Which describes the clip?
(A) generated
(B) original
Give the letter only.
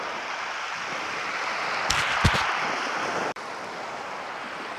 A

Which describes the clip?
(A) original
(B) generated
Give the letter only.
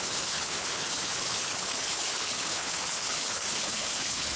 B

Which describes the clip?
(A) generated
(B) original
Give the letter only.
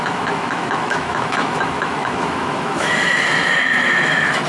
A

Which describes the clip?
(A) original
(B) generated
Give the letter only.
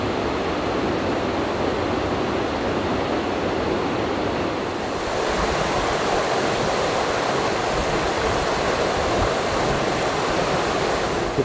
A